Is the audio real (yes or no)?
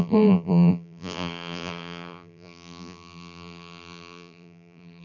no